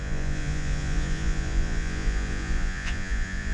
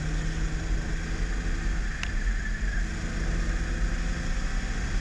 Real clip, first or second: second